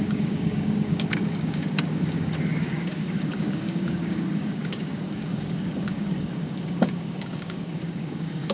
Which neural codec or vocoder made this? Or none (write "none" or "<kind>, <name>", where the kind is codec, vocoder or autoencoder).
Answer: codec, DAC